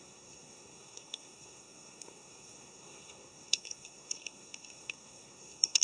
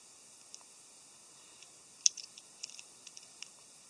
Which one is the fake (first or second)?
first